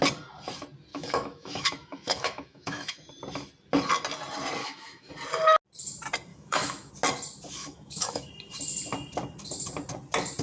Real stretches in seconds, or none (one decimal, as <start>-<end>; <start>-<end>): 0.0-0.9; 3.1-4.6; 5.1-6.3; 6.9-7.6; 8.3-10.4